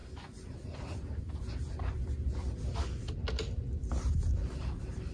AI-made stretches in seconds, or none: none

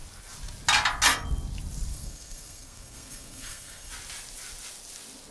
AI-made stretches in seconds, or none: 1.9-3.9 (codec, SNAC)